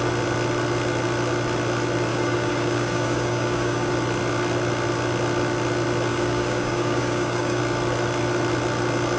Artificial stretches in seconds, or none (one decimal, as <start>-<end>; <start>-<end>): 2.1-3.9; 6.1-7.6

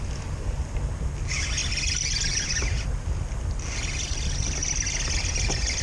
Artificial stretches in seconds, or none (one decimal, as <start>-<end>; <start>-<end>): none

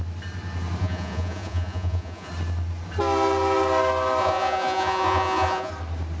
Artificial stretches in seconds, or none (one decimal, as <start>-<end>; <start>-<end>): 0.8-2.3; 4.2-5.7

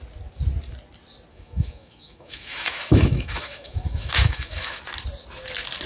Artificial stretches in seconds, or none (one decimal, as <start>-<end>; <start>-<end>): 1.3-4.8

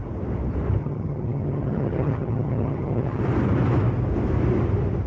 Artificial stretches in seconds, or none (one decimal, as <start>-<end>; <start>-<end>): 0.8-3.2

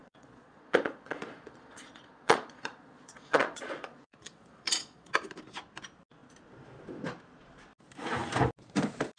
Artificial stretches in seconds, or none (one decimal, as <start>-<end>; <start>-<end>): 0.0-5.1